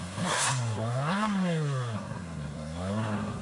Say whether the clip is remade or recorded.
remade